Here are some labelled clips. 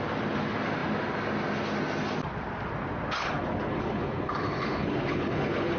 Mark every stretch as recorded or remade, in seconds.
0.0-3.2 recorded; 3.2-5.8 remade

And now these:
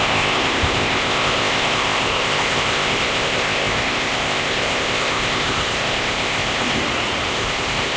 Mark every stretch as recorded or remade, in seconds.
0.0-6.8 remade; 6.8-7.3 recorded; 7.3-8.0 remade